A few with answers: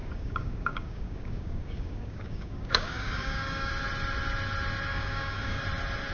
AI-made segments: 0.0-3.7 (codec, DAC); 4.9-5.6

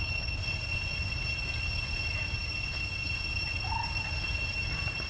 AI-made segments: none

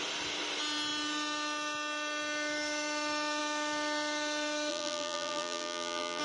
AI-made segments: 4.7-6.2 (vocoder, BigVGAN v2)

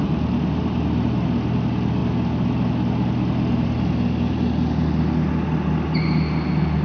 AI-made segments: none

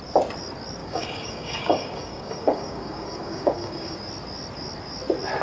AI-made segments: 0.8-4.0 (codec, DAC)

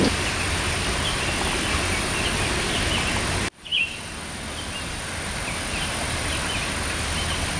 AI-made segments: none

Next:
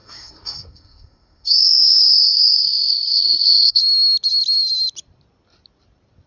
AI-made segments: 0.0-3.8 (codec, SNAC)

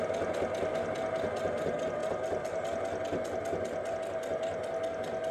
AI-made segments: none